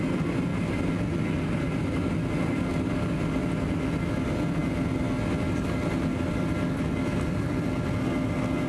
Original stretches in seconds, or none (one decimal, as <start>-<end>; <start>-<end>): 0.0-8.7